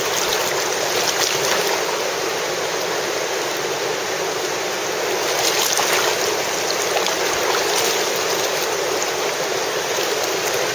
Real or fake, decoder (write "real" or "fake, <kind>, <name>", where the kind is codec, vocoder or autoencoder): real